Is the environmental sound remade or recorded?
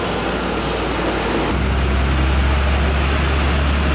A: recorded